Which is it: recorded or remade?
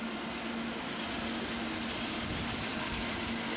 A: recorded